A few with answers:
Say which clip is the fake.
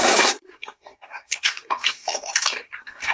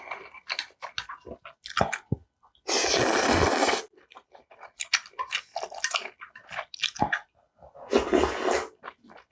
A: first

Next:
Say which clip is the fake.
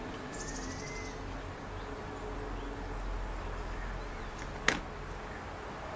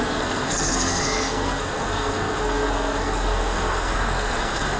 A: second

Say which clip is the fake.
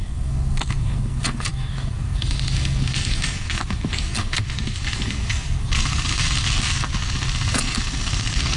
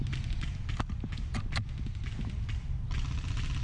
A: first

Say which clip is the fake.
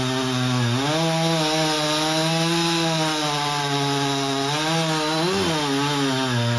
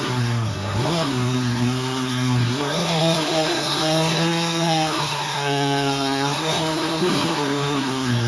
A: second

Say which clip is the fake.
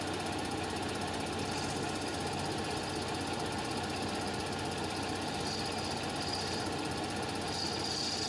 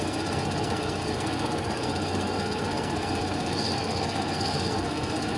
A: second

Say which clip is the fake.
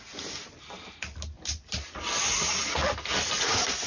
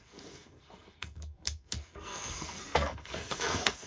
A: second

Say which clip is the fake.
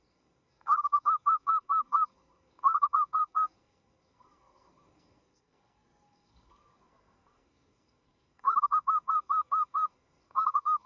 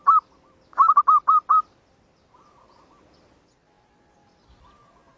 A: first